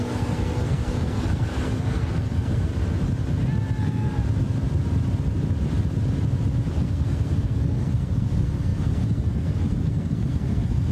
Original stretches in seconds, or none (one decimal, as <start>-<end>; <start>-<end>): 2.7-3.8; 4.2-6.7